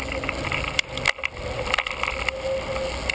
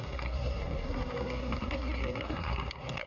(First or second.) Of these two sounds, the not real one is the second